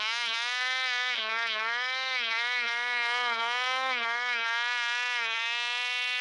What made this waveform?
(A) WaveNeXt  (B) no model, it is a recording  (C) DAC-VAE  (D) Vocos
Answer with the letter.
C